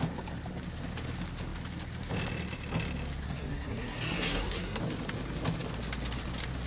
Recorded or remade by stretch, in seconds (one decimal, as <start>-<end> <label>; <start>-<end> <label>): 0.0-3.2 recorded; 3.2-4.8 remade; 4.8-6.7 recorded